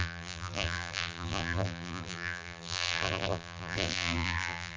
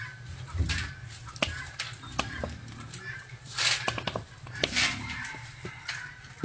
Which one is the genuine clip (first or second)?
second